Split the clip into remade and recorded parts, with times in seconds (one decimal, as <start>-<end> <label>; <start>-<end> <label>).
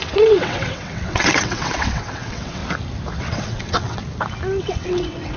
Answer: 0.0-2.6 remade; 2.6-3.2 recorded; 3.2-4.0 remade; 4.0-4.6 recorded; 4.6-5.4 remade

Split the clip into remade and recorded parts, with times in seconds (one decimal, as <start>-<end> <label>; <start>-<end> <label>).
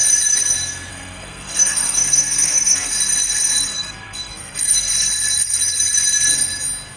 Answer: 0.0-0.9 recorded; 0.9-2.9 remade; 2.9-3.7 recorded; 3.7-4.9 remade; 4.9-7.0 recorded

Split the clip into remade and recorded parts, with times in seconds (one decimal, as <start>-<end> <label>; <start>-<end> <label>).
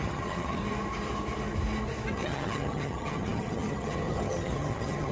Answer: 0.0-0.6 remade; 0.6-2.1 recorded; 2.1-5.1 remade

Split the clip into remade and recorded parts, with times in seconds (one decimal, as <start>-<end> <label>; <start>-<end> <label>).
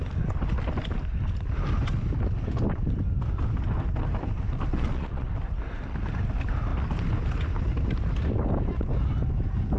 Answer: 0.0-4.7 recorded; 4.7-5.3 remade; 5.3-9.8 recorded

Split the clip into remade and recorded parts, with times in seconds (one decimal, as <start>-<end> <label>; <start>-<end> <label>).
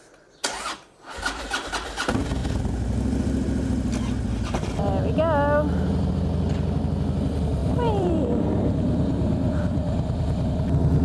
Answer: 0.0-7.6 recorded; 7.6-10.5 remade; 10.5-11.0 recorded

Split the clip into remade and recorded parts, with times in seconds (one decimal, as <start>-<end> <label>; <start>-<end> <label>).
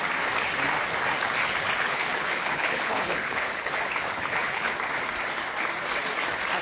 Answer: 0.0-1.4 recorded; 1.4-4.7 remade; 4.7-6.6 recorded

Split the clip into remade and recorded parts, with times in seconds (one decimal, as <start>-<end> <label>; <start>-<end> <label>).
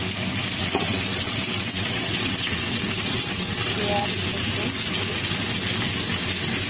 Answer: 0.0-0.6 recorded; 0.6-3.8 remade; 3.8-6.7 recorded